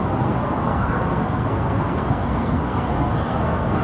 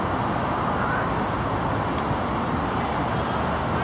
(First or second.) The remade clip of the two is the first